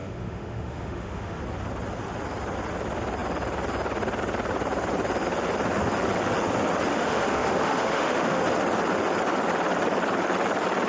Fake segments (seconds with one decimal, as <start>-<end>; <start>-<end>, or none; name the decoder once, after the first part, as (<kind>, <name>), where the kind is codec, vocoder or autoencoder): 0.0-1.4 (autoencoder, DAC-VAE); 6.9-8.4